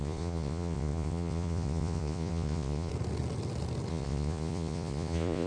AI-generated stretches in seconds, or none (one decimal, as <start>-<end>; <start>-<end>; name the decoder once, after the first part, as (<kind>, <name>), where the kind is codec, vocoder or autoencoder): 0.0-2.9 (vocoder, Vocos); 3.9-5.5